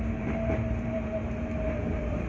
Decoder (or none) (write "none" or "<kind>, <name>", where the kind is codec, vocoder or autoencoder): vocoder, BigVGAN v2